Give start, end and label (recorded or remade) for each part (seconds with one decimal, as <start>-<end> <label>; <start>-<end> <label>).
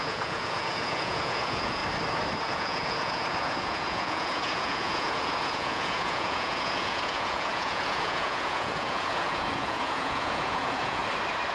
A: 0.0-1.8 remade; 1.8-2.4 recorded; 2.4-11.0 remade; 11.0-11.5 recorded